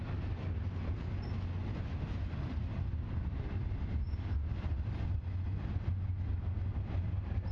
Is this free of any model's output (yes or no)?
yes